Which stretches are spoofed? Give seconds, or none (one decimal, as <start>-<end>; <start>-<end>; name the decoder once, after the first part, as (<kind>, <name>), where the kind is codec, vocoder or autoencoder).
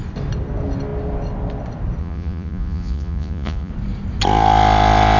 2.0-3.7 (vocoder, Vocos)